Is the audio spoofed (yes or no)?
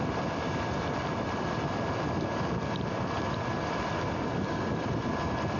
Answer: no